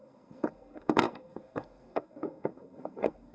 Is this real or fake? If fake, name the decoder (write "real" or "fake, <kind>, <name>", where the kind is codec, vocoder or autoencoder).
fake, codec, SNAC